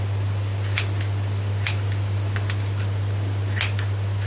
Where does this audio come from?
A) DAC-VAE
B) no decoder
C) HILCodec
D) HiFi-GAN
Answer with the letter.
B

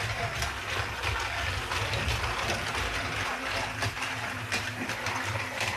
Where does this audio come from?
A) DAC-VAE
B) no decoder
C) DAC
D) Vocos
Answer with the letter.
B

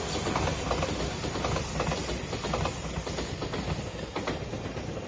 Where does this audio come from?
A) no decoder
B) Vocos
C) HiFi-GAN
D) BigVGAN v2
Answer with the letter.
A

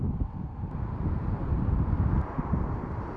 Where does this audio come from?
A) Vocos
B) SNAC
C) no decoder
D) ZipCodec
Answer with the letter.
C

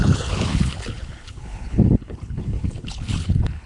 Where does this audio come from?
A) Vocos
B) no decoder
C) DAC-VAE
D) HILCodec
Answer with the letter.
D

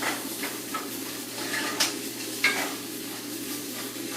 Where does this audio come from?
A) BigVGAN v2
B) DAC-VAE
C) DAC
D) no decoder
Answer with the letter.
C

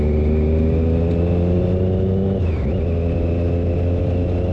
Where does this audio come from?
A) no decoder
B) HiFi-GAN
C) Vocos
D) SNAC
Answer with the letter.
A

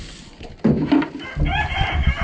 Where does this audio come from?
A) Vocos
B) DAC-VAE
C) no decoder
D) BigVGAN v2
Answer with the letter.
C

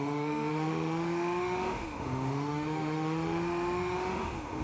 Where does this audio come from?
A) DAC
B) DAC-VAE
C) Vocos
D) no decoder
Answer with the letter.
B